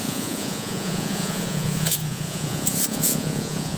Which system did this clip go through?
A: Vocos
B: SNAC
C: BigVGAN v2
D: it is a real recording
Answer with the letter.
A